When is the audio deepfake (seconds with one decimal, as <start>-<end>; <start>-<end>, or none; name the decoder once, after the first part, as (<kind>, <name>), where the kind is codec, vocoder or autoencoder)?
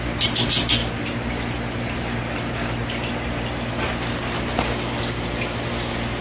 none